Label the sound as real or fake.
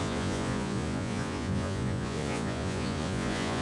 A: fake